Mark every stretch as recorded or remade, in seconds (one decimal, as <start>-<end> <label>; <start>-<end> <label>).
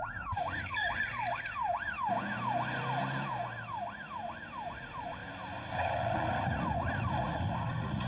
0.0-0.8 remade; 0.8-4.7 recorded; 4.7-5.2 remade; 5.2-5.7 recorded; 5.7-8.1 remade